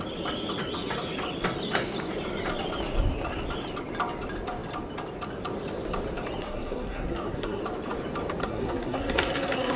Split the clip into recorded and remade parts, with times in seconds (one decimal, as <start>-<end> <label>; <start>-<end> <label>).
0.0-6.4 recorded; 6.4-7.6 remade; 7.6-8.4 recorded; 8.4-9.8 remade